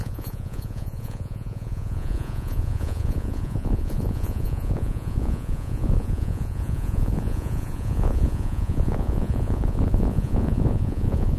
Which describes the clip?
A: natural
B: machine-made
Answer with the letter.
B